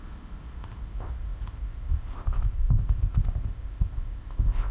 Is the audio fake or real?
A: fake